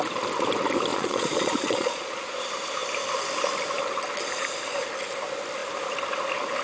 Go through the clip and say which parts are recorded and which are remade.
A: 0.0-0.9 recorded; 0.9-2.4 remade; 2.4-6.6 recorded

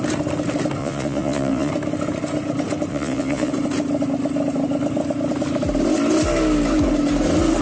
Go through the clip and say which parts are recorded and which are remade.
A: 0.0-0.8 recorded; 0.8-1.7 remade; 1.7-2.9 recorded; 2.9-3.5 remade; 3.5-7.6 recorded

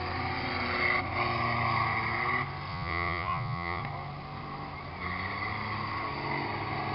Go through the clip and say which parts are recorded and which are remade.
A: 0.0-2.7 recorded; 2.7-3.8 remade; 3.8-6.9 recorded